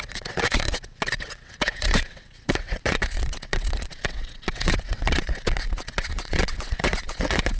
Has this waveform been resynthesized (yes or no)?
yes